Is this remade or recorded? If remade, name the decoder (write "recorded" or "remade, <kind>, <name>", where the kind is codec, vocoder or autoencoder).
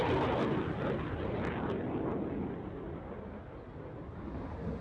recorded